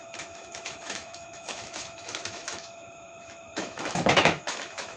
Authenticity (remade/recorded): remade